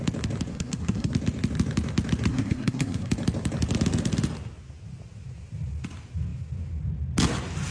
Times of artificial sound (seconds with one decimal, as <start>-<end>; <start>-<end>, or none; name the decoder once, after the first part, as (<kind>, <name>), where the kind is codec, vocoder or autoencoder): 0.5-1.1 (codec, SNAC); 2.3-3.1